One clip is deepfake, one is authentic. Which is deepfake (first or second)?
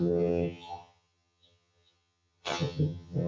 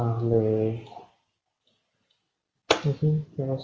first